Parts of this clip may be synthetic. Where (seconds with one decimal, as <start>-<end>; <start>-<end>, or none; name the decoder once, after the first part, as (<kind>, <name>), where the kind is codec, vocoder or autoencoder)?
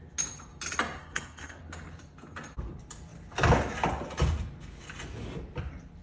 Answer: 1.0-1.6 (codec, SNAC)